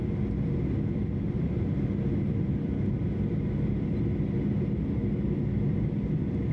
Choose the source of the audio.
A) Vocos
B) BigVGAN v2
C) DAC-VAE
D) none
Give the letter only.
D